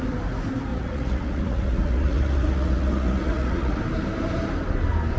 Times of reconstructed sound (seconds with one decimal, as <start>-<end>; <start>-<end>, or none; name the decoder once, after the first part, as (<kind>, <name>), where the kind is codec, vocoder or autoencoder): 0.7-3.8 (vocoder, Vocos)